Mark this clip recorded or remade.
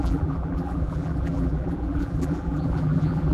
remade